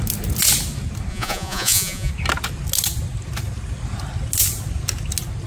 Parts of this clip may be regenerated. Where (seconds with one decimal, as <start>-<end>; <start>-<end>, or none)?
1.1-2.1